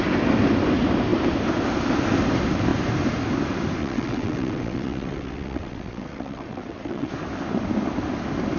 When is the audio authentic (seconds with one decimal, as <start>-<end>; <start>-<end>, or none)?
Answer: 0.0-3.8; 7.1-8.6

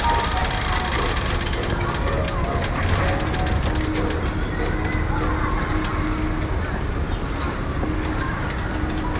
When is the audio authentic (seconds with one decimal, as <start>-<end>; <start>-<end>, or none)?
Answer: 0.0-9.2

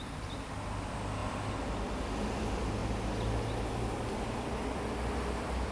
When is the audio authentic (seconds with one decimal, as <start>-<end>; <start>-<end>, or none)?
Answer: 0.0-5.7